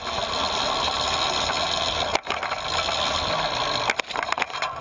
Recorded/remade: recorded